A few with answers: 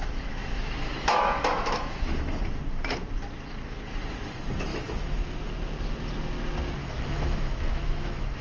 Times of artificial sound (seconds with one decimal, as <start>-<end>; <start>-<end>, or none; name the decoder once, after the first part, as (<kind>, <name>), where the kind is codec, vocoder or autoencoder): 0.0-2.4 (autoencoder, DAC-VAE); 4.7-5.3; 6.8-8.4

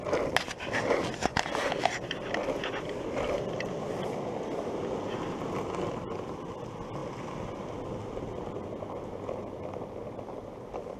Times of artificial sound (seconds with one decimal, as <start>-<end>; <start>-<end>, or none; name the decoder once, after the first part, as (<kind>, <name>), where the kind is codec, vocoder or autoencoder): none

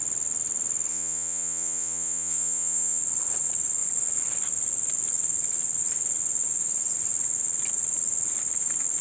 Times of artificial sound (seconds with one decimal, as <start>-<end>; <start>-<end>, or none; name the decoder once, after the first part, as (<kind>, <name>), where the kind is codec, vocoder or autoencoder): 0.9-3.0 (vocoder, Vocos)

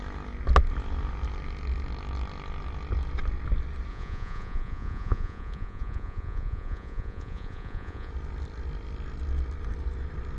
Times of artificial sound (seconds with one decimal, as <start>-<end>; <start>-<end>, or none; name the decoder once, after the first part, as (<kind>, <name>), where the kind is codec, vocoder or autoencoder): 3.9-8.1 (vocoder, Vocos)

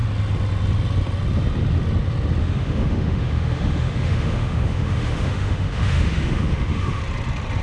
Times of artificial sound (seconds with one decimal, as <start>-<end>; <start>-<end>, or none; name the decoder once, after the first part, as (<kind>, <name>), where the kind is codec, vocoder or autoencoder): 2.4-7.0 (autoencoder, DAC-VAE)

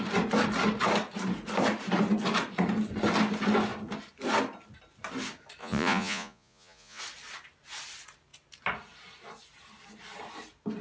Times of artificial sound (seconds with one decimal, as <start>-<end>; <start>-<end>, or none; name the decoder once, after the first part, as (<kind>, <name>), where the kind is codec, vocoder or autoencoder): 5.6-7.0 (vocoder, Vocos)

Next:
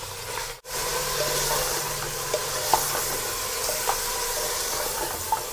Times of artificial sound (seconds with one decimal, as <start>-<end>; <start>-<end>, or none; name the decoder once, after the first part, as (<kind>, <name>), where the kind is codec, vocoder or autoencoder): none